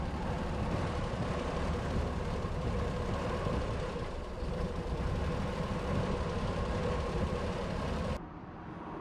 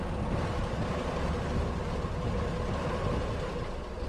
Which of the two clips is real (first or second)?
second